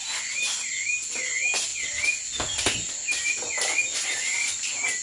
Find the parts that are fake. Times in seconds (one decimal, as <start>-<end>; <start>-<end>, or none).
none